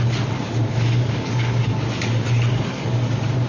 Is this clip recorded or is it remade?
remade